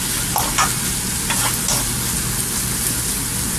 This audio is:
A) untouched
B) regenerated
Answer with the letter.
A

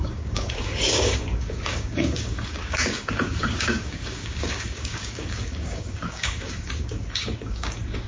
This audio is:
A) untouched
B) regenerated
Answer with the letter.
B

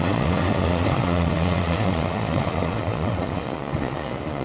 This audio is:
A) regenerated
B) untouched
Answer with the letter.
A